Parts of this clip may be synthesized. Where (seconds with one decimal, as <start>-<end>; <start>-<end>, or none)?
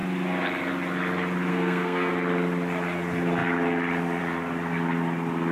1.5-2.1